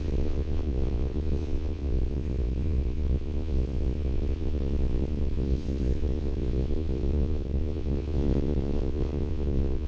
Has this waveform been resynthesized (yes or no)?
yes